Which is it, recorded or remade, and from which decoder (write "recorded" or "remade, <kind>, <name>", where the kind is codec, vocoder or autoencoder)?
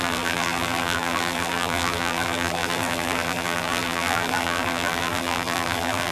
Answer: remade, vocoder, BigVGAN v2